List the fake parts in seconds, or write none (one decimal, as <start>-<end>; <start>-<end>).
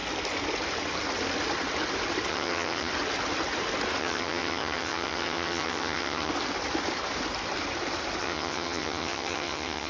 2.3-2.9; 4.0-6.3; 8.2-9.9